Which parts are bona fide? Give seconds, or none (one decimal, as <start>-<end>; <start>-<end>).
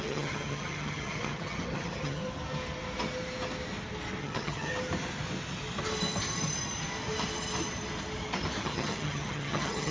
2.2-4.2; 4.7-8.6